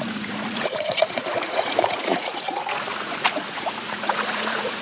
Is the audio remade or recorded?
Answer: remade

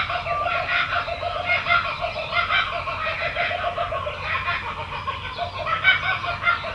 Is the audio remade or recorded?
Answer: recorded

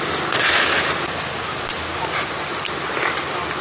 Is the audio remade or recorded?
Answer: recorded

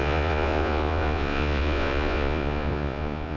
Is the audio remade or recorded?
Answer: remade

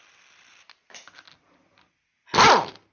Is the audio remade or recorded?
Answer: recorded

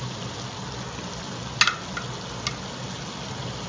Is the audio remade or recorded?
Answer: recorded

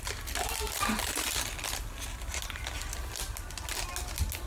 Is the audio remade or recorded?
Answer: recorded